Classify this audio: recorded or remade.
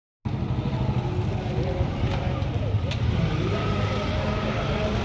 recorded